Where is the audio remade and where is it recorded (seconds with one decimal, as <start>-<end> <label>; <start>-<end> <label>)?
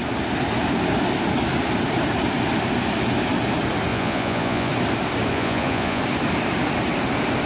0.0-3.9 recorded; 3.9-4.7 remade; 4.7-5.3 recorded; 5.3-6.0 remade; 6.0-7.5 recorded